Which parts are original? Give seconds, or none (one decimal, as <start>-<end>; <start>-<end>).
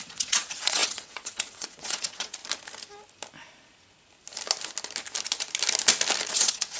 2.4-6.3